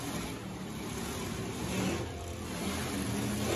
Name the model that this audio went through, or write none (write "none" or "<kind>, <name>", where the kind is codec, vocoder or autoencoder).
none